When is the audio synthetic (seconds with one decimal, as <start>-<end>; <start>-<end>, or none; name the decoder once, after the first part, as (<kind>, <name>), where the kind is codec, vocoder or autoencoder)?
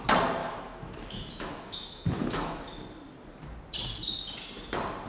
0.4-2.6 (autoencoder, DAC-VAE)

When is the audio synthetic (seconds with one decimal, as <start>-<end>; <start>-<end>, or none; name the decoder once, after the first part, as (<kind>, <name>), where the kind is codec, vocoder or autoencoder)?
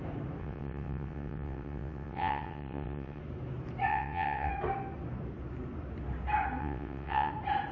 0.4-3.2 (vocoder, WaveNeXt); 3.9-4.5; 6.6-7.3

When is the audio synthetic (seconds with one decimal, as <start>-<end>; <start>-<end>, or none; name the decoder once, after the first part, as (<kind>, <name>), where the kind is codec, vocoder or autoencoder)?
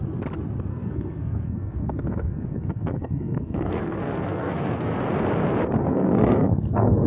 0.7-5.0 (codec, SNAC); 5.8-7.1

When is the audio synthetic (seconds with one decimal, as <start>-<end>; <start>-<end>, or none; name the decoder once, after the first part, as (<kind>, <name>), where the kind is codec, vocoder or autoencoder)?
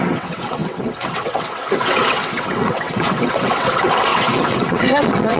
0.0-5.4 (vocoder, WaveNeXt)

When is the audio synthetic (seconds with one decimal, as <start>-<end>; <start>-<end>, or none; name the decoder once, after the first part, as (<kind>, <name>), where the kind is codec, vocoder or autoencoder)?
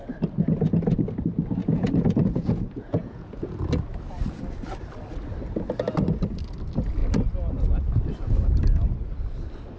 1.6-3.6 (vocoder, Vocos)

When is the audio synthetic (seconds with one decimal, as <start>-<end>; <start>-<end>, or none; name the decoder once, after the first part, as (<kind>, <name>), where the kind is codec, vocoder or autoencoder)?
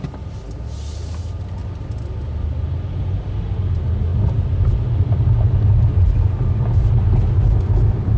none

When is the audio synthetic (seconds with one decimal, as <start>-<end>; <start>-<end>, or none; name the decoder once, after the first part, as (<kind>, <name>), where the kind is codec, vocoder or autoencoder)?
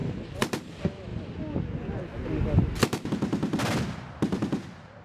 none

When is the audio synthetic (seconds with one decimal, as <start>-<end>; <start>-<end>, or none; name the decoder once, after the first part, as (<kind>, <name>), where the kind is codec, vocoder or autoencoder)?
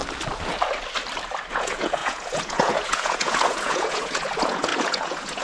1.5-5.4 (vocoder, Vocos)